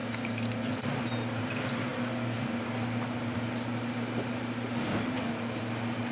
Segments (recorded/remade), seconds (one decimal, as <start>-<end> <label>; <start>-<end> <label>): 0.0-6.1 recorded